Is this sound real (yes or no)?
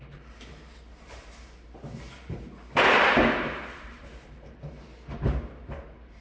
no